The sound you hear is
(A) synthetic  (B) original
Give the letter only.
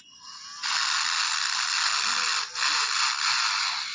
A